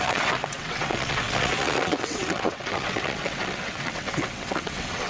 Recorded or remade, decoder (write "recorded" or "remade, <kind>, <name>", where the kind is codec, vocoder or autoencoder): remade, vocoder, WaveNeXt